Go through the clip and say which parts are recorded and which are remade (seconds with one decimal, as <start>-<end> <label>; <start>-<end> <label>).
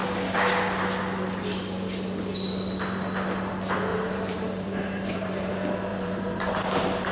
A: 0.0-3.9 recorded; 3.9-5.5 remade; 5.5-5.9 recorded; 5.9-6.5 remade; 6.5-7.1 recorded